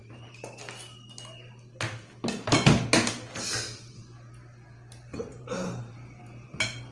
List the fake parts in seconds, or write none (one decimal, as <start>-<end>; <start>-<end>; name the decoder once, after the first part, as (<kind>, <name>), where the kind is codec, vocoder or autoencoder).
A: 5.3-6.2 (vocoder, BigVGAN v2)